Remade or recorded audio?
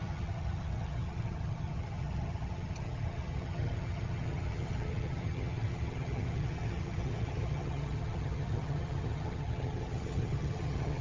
remade